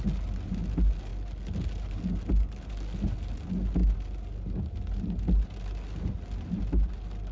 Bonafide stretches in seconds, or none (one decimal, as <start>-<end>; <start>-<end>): 0.0-7.3